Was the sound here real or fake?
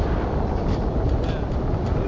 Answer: real